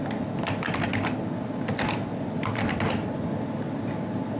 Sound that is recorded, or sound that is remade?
recorded